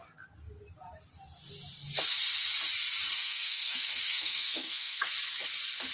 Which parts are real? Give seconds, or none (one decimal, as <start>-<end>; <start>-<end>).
0.0-3.1; 5.1-5.9